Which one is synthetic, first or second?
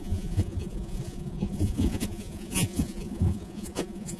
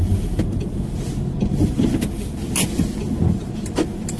first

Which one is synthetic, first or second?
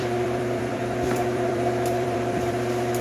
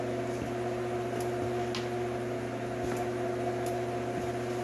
first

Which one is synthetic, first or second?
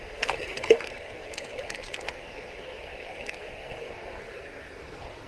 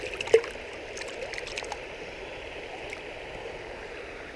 first